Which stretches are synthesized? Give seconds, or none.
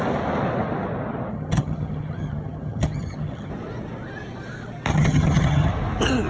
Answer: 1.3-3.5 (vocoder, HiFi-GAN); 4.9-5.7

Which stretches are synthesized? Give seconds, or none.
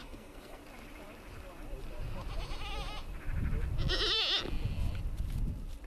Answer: 0.0-0.6 (codec, SNAC)